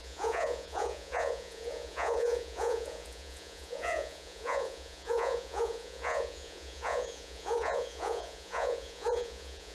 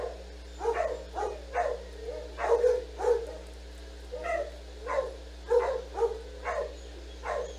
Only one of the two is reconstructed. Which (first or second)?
first